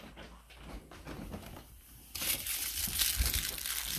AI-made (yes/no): no